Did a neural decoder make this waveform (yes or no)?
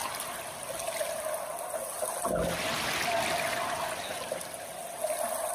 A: no